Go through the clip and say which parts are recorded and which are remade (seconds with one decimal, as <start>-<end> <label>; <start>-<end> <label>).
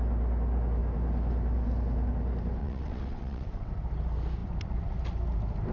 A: 0.0-2.6 recorded; 2.6-3.7 remade; 3.7-5.7 recorded